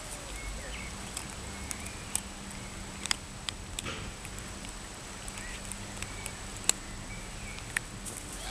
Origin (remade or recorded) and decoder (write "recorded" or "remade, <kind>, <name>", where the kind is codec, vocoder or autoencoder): recorded